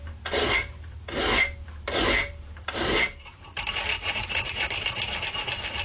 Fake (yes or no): yes